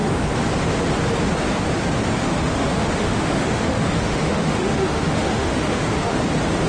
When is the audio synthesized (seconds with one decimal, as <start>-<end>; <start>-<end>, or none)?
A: 2.2-6.2